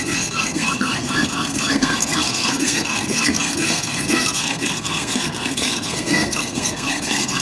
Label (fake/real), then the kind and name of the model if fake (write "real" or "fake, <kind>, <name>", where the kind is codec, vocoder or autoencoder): fake, codec, SNAC